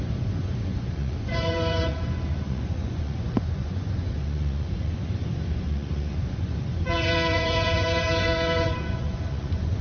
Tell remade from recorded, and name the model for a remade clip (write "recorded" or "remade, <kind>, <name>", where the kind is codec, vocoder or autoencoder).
remade, vocoder, Vocos